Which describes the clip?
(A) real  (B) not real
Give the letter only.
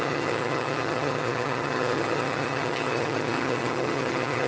B